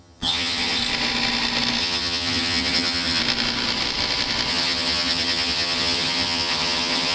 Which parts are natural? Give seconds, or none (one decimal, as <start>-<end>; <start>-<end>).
0.8-1.8; 3.2-4.5